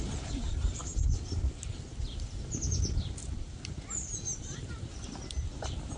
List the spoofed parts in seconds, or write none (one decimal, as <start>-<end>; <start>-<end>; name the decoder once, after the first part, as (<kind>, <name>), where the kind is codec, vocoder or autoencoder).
0.0-0.9 (vocoder, BigVGAN v2); 2.0-6.0